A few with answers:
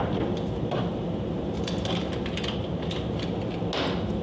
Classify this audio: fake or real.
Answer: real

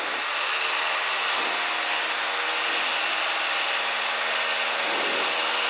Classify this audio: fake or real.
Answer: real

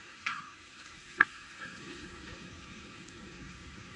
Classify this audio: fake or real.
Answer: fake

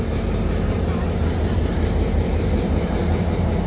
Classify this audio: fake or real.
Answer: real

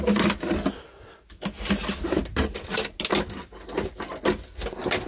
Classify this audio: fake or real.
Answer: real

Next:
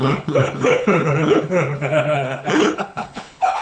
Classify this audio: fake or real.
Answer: fake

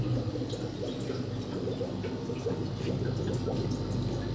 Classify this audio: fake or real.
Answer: real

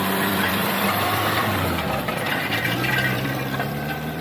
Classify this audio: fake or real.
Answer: fake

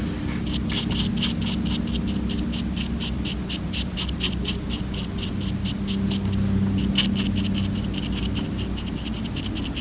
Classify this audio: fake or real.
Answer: real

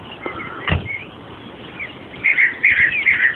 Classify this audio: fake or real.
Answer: real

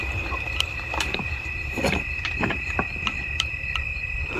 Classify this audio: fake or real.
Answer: fake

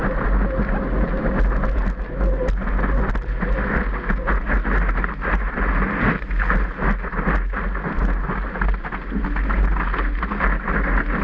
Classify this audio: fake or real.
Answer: real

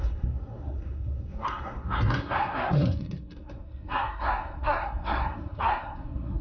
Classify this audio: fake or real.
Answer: fake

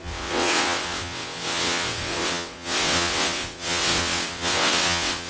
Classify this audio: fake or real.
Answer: fake